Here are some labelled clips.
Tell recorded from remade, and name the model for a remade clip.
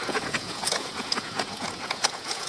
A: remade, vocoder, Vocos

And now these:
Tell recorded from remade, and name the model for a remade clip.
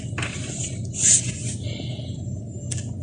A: recorded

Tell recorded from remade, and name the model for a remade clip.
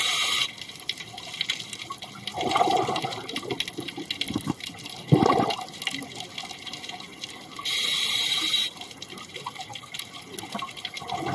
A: recorded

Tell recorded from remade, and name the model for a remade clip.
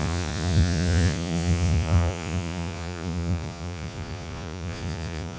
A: remade, vocoder, Vocos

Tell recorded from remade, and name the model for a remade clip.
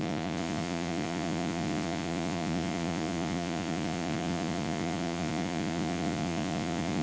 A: remade, vocoder, Vocos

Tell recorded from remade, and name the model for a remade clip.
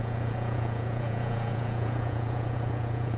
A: remade, vocoder, Vocos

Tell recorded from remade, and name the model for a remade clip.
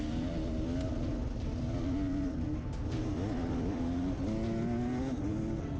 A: recorded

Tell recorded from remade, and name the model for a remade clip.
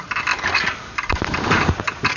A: recorded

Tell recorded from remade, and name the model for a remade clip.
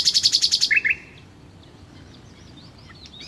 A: recorded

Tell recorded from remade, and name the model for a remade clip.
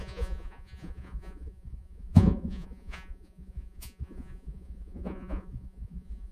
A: remade, vocoder, Vocos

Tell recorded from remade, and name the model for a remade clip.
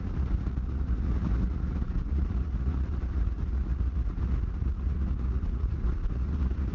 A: remade, vocoder, Vocos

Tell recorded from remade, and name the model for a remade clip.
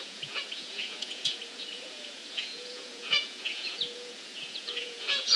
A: remade, vocoder, Vocos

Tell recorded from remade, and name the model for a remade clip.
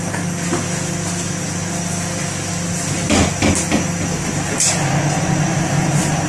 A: recorded